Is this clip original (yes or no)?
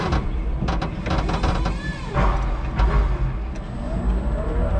yes